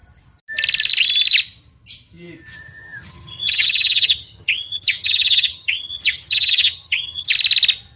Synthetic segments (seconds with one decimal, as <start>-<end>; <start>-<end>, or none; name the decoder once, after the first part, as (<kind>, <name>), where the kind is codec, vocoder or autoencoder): 2.5-7.3 (vocoder, HiFi-GAN)